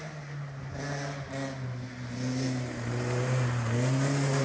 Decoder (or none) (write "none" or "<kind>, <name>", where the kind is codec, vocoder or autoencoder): none